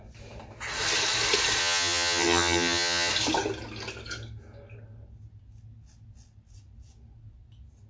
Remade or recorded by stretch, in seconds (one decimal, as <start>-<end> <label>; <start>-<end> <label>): 0.0-1.6 recorded; 1.6-3.1 remade; 3.1-7.9 recorded